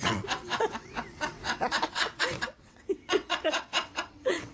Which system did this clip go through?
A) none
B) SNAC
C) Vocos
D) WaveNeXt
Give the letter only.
D